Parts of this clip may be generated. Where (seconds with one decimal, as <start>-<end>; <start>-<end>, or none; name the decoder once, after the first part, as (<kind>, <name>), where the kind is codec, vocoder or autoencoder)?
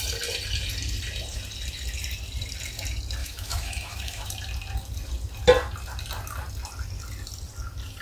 3.2-4.3 (autoencoder, DAC-VAE)